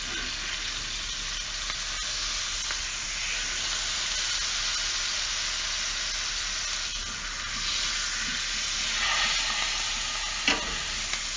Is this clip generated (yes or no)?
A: no